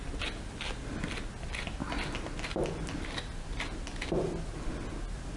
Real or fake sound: real